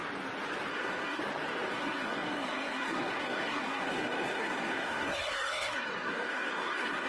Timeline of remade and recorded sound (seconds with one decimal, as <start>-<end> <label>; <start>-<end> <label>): 0.0-0.7 recorded; 0.7-1.2 remade; 1.2-1.7 recorded; 1.7-7.1 remade